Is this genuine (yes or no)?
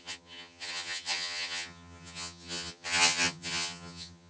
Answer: no